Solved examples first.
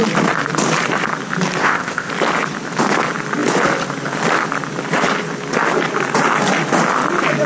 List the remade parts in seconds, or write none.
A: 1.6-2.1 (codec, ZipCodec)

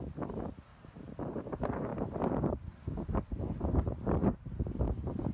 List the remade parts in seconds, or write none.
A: 0.0-0.7 (vocoder, BigVGAN v2); 1.4-5.3

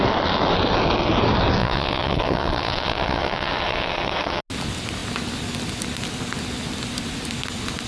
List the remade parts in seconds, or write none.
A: 1.6-4.4 (vocoder, WaveNeXt)